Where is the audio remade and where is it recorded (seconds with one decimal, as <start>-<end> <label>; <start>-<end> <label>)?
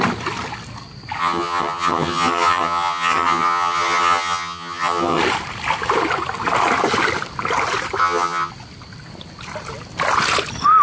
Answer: 0.0-1.2 recorded; 1.2-5.2 remade; 5.2-8.0 recorded; 8.0-8.5 remade; 8.5-10.8 recorded